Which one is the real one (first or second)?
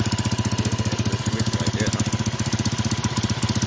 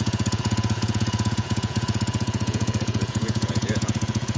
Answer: first